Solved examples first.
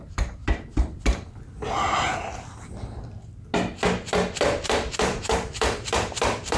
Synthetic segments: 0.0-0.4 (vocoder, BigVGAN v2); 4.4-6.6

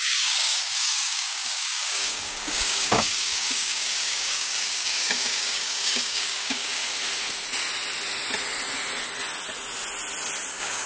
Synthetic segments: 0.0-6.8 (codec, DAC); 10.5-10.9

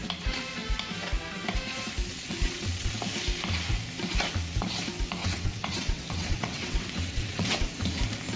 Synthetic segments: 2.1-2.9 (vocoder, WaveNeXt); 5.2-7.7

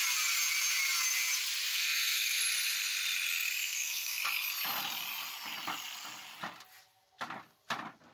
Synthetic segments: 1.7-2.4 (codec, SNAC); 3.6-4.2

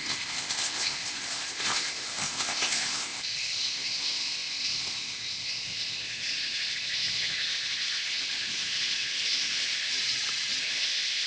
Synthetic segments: 0.0-9.9 (codec, ZipCodec); 10.6-11.3

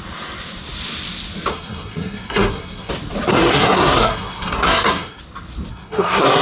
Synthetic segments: 1.5-2.9 (codec, SNAC); 3.3-5.2; 5.7-6.4

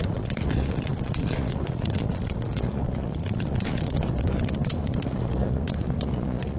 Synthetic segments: 0.0-6.6 (vocoder, Vocos)

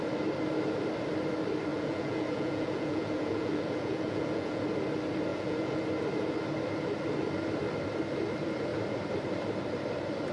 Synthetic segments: 1.7-4.6 (vocoder, Vocos); 5.3-5.8